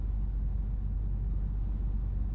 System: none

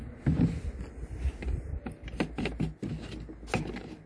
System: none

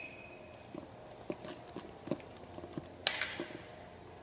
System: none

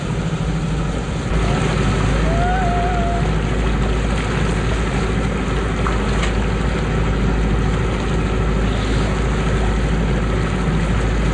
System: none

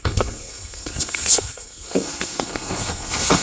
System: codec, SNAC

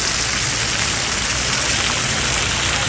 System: none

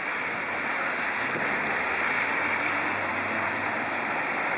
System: none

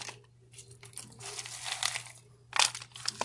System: none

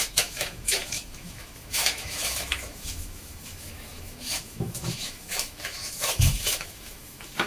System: autoencoder, DAC-VAE